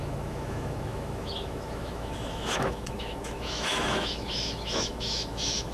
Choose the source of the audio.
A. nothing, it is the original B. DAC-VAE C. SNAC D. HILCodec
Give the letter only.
B